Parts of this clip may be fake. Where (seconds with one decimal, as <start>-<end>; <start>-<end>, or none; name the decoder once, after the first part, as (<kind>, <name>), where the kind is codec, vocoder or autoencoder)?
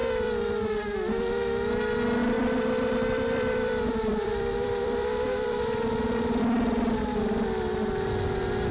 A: 0.0-0.7 (vocoder, BigVGAN v2); 2.2-6.4